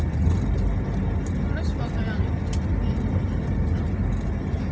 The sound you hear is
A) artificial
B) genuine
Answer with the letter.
B